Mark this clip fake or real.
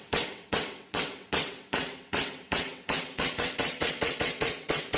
fake